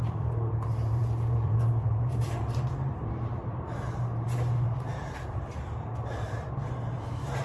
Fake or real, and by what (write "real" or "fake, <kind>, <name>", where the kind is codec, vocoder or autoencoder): fake, vocoder, BigVGAN v2